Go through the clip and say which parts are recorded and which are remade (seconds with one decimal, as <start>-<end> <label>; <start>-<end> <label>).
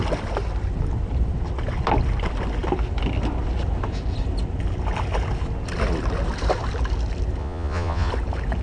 0.0-7.4 recorded; 7.4-8.1 remade; 8.1-8.6 recorded